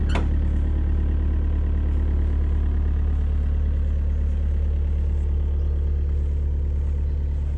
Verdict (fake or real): real